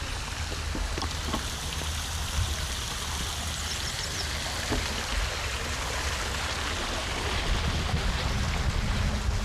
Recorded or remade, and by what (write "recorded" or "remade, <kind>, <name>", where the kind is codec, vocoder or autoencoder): recorded